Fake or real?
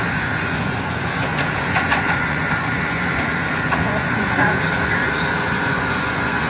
fake